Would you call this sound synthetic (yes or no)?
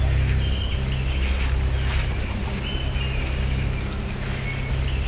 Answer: no